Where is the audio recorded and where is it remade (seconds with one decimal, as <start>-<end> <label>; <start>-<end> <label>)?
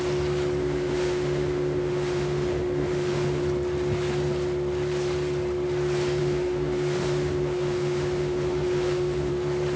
0.0-0.6 recorded; 0.6-3.4 remade; 3.4-6.2 recorded; 6.2-9.3 remade; 9.3-9.8 recorded